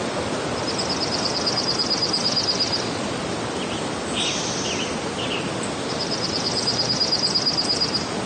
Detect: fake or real fake